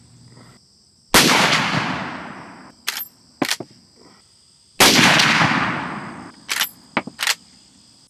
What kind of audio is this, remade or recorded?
recorded